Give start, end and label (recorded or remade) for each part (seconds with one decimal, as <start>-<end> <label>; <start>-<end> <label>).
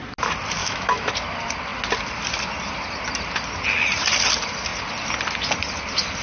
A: 0.0-0.6 recorded; 0.6-1.1 remade; 1.1-6.2 recorded